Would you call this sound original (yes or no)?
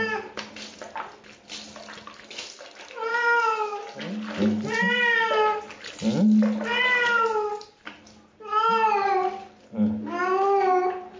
yes